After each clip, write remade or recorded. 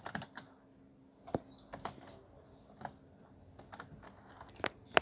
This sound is recorded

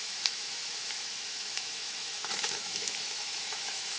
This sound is remade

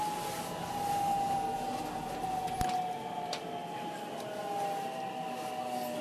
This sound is recorded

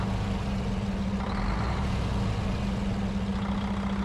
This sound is recorded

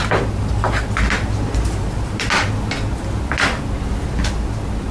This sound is recorded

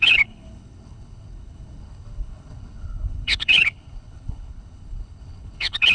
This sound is remade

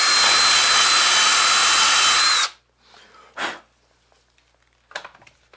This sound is recorded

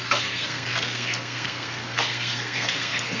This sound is remade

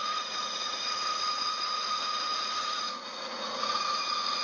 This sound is remade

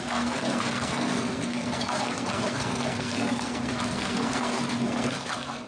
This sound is remade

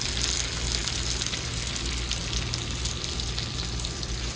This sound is recorded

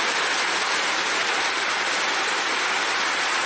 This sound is recorded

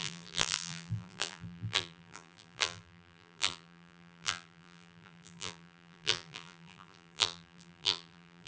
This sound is remade